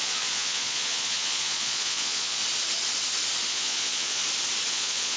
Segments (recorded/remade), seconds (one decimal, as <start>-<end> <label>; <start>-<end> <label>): 0.0-2.4 remade; 2.4-3.5 recorded; 3.5-4.2 remade; 4.2-4.7 recorded; 4.7-5.2 remade

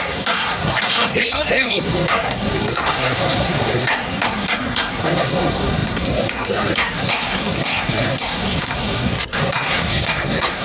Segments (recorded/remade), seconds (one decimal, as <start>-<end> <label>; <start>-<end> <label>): 0.0-10.6 remade

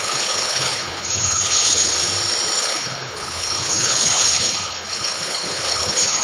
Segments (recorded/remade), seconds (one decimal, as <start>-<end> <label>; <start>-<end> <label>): 0.0-1.9 remade; 1.9-2.6 recorded; 2.6-6.2 remade

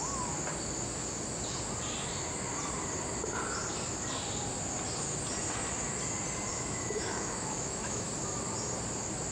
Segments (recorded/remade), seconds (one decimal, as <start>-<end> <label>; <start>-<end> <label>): 0.0-6.5 recorded; 6.5-8.1 remade; 8.1-9.3 recorded

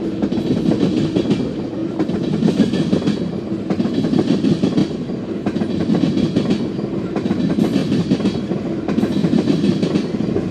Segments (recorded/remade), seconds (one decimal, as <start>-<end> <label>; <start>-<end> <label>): 0.0-7.8 recorded; 7.8-8.4 remade; 8.4-9.2 recorded; 9.2-9.9 remade; 9.9-10.5 recorded

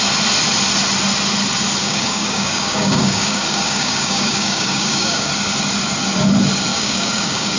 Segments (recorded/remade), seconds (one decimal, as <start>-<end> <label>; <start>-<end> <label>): 0.0-1.8 recorded; 1.8-5.3 remade; 5.3-6.7 recorded; 6.7-7.6 remade

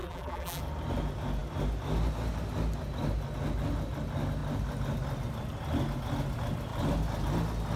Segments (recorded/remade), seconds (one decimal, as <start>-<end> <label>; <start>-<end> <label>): 0.0-0.6 remade; 0.6-7.8 recorded

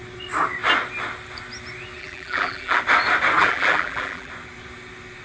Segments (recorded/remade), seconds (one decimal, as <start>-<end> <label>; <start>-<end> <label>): 0.0-2.0 recorded; 2.0-2.8 remade; 2.8-3.4 recorded; 3.4-4.3 remade; 4.3-5.2 recorded